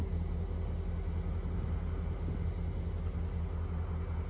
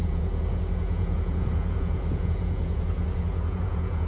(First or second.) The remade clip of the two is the second